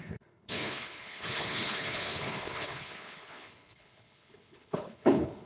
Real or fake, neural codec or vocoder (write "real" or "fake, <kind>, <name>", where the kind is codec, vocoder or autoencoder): fake, codec, HILCodec